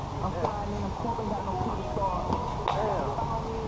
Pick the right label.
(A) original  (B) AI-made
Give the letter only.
A